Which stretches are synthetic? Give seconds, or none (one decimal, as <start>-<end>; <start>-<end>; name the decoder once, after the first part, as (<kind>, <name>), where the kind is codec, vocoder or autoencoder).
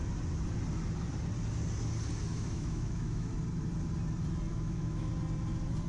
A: 2.3-3.3 (autoencoder, DAC-VAE); 4.5-5.1